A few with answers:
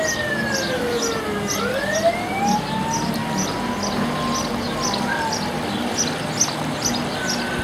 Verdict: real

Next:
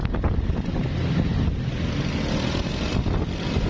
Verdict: real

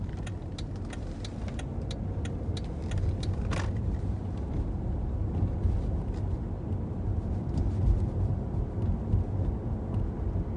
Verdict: real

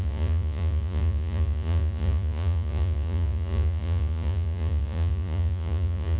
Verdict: fake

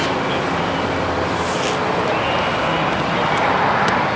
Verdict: real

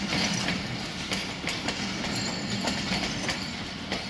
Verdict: real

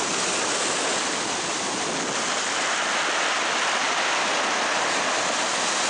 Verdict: real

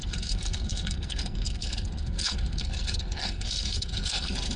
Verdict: fake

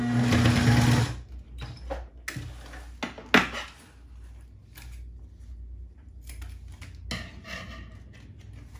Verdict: real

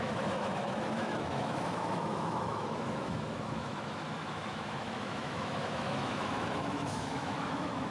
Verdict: fake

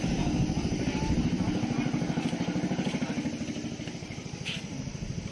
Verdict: real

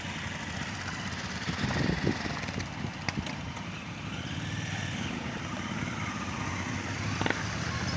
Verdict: fake